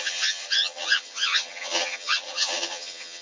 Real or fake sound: fake